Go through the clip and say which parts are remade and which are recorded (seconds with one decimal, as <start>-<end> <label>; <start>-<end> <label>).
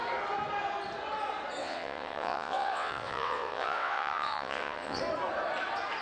0.0-1.6 recorded; 1.6-5.0 remade; 5.0-6.0 recorded